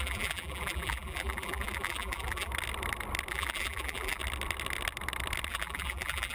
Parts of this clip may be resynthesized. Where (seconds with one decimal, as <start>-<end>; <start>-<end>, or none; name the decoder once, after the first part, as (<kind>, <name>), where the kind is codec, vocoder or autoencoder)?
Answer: 0.0-2.5 (vocoder, BigVGAN v2); 3.3-4.2; 5.5-6.3